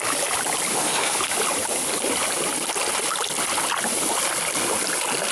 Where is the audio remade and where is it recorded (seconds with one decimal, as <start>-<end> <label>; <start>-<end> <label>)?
0.0-0.7 recorded; 0.7-1.2 remade; 1.2-5.3 recorded